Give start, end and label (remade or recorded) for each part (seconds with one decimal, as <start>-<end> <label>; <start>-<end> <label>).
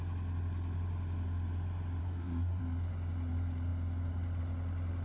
0.0-2.0 recorded; 2.0-2.6 remade; 2.6-5.0 recorded